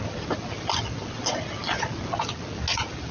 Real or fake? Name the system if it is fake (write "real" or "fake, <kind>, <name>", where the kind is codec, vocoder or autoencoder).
real